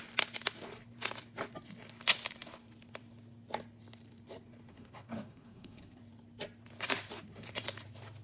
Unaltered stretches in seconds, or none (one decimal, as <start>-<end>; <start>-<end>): 0.0-4.7; 6.0-8.2